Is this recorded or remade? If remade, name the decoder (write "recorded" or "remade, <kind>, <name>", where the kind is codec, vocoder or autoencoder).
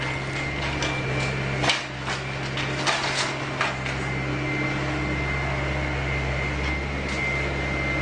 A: recorded